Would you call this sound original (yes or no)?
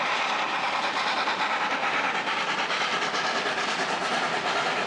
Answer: yes